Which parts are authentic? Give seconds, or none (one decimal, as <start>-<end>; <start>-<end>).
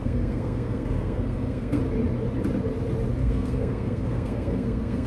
1.8-3.2